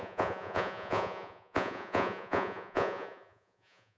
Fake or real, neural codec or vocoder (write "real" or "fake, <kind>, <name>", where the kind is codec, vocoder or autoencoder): fake, vocoder, Vocos